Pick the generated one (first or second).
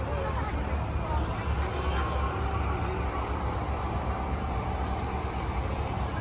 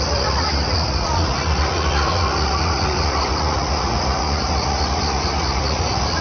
second